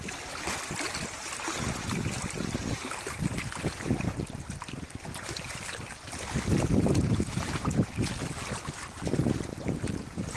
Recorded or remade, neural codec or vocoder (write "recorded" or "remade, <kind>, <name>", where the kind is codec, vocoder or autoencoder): recorded